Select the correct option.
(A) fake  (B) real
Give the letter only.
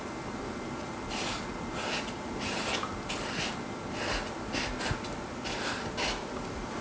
B